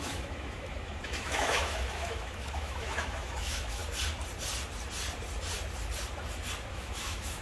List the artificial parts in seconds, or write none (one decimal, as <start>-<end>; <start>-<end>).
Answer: 0.0-3.8; 6.7-7.4